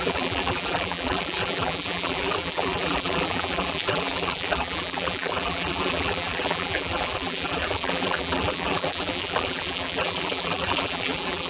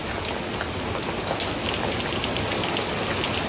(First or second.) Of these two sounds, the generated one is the first